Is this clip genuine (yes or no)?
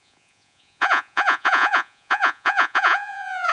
no